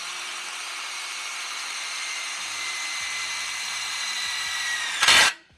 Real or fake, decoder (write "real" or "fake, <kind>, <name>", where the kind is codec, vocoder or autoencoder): fake, vocoder, BigVGAN v2